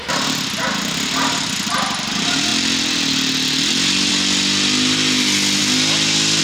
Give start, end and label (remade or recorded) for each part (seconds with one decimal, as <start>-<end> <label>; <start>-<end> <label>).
0.0-6.4 recorded